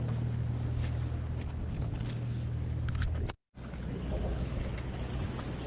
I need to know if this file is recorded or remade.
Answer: recorded